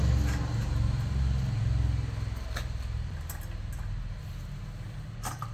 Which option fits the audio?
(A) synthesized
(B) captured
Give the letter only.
B